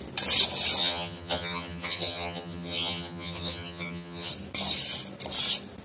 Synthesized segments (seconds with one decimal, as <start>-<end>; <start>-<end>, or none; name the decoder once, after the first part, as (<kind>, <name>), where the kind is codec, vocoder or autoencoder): 0.8-4.3 (vocoder, HiFi-GAN)